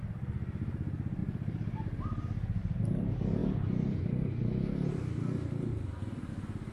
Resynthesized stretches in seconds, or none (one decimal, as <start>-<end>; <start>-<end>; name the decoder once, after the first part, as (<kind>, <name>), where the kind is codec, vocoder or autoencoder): 5.7-6.3 (vocoder, BigVGAN v2)